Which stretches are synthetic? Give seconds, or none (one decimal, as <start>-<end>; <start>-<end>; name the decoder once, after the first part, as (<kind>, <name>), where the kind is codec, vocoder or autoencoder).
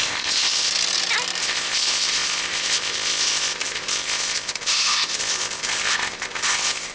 0.0-0.7 (codec, ZipCodec); 1.4-6.9